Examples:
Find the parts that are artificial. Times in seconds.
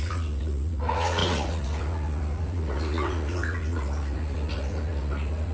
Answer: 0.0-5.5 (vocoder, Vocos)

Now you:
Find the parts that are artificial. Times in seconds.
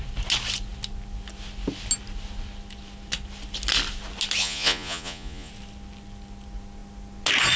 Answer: 4.4-5.5 (vocoder, Vocos)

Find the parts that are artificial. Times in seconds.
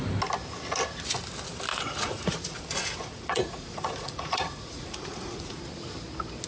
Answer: 1.7-5.6 (vocoder, Vocos)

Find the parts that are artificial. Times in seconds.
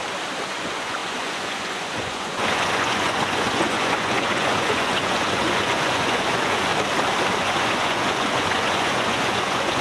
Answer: 0.5-6.7 (vocoder, Vocos); 7.4-9.8